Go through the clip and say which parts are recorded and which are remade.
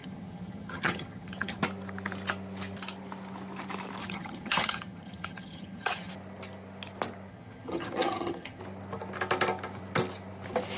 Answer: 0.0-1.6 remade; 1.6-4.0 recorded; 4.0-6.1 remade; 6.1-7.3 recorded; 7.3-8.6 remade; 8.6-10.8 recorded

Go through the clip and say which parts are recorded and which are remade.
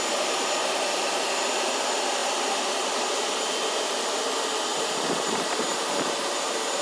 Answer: 0.0-0.6 recorded; 0.6-1.3 remade; 1.3-2.2 recorded; 2.2-4.2 remade; 4.2-4.7 recorded; 4.7-6.8 remade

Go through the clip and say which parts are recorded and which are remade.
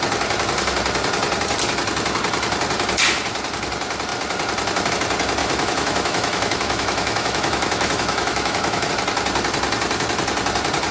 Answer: 0.0-5.4 recorded; 5.4-8.9 remade; 8.9-10.9 recorded